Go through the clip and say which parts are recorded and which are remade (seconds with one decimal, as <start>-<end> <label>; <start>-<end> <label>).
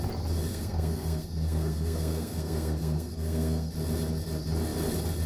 0.0-0.5 recorded; 0.5-3.7 remade; 3.7-5.3 recorded